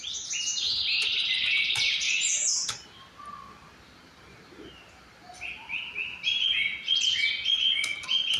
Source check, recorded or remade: recorded